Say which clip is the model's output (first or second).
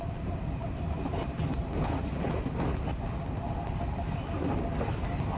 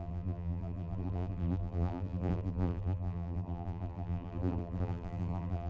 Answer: second